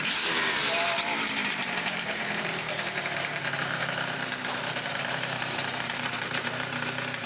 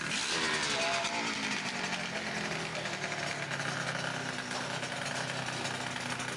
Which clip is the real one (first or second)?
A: second